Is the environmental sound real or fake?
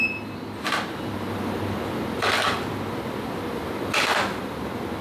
real